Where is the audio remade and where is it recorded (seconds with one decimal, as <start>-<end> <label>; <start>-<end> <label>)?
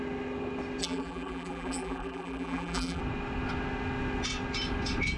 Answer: 0.0-0.8 recorded; 0.8-3.0 remade; 3.0-5.2 recorded